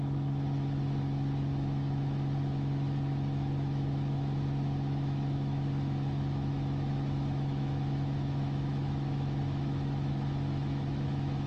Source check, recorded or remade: remade